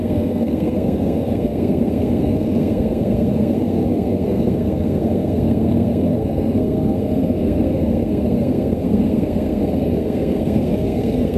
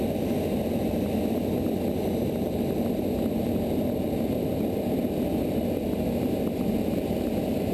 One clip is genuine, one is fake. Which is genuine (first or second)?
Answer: second